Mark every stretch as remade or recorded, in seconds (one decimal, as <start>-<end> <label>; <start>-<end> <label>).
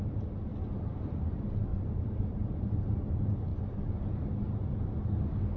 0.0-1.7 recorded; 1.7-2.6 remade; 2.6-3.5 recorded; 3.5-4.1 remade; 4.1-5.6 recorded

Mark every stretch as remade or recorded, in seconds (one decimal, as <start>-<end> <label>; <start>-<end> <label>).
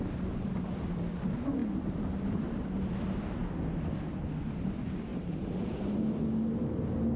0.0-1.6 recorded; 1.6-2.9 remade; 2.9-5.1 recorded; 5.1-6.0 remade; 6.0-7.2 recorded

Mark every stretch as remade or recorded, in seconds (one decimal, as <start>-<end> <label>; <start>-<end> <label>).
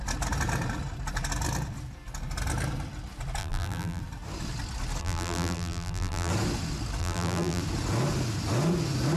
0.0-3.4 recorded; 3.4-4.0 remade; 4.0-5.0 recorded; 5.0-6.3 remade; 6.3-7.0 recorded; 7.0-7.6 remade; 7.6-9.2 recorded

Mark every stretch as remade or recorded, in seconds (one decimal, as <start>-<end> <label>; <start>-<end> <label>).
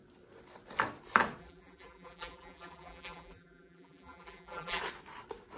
0.0-1.4 recorded; 1.4-4.8 remade; 4.8-5.6 recorded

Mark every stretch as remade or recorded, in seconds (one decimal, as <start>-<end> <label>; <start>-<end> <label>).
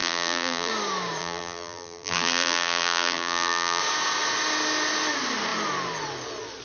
0.0-0.7 remade; 0.7-1.2 recorded; 1.2-3.8 remade; 3.8-6.6 recorded